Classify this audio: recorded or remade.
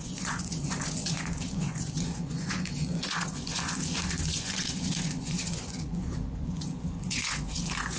remade